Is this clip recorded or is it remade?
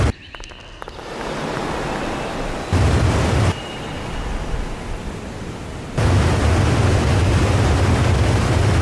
recorded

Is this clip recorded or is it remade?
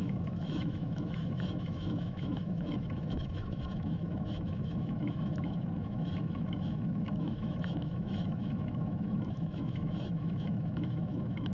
remade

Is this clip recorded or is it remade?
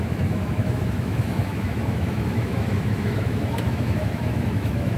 remade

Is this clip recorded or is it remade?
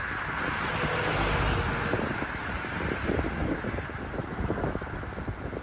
recorded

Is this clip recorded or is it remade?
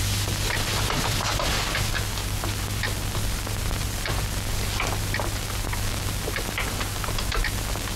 recorded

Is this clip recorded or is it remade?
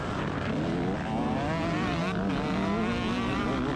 recorded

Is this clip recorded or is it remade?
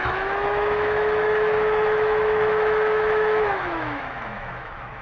remade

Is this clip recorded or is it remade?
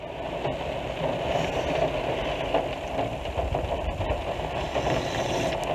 recorded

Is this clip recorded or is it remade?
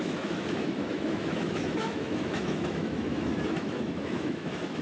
remade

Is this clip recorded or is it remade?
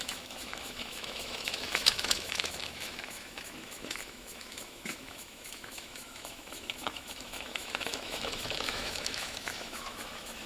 remade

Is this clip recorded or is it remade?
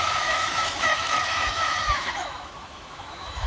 remade